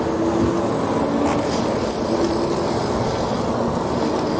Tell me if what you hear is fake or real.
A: real